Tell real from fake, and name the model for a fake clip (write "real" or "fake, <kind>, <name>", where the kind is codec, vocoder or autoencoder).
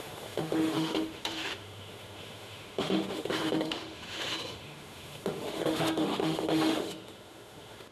fake, autoencoder, DAC-VAE